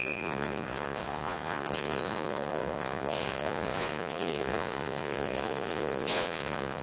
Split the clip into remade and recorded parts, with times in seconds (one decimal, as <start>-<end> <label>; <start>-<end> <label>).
0.0-6.8 remade